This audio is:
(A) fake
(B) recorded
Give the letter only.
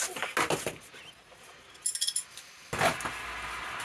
B